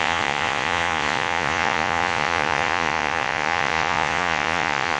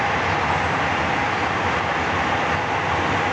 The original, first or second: second